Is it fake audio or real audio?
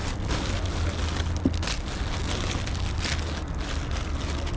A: real